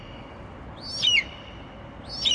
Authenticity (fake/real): real